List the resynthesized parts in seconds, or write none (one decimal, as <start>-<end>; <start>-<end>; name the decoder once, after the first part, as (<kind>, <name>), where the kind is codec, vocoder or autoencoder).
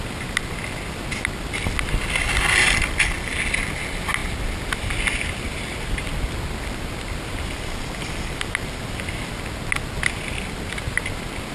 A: none